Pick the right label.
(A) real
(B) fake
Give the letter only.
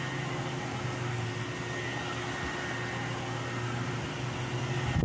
A